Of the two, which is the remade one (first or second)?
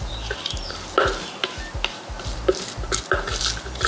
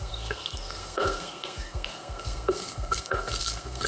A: second